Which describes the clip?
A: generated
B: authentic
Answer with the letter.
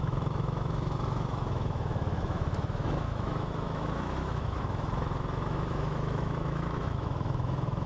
A